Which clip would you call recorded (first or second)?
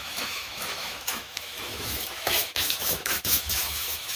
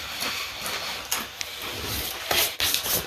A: second